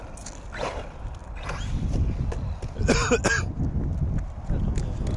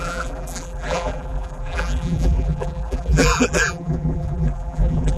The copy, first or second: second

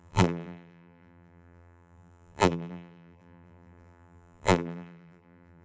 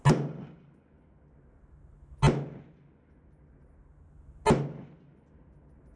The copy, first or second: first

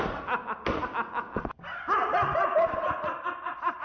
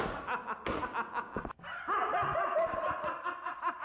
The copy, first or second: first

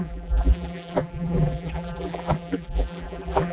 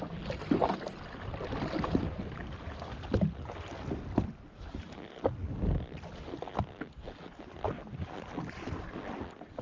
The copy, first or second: first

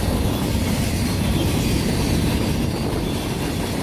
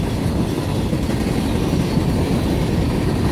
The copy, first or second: first